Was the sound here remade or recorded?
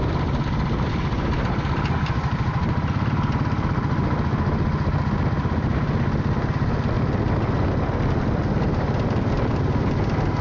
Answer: recorded